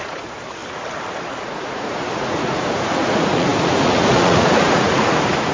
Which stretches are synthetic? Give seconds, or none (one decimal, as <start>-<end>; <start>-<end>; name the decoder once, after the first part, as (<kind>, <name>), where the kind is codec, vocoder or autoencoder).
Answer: 0.0-0.6 (vocoder, Vocos); 1.4-5.5